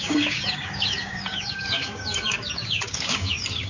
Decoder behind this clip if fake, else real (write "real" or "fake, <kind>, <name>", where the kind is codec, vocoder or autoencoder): fake, codec, DAC